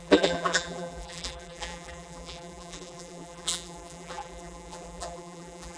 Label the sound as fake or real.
fake